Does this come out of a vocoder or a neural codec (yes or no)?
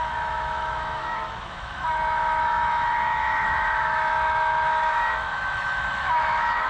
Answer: yes